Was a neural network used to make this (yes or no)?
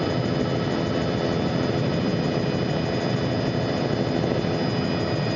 no